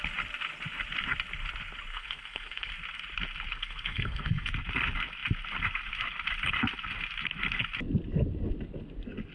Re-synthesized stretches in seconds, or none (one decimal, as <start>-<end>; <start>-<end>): 1.9-2.7; 3.5-4.5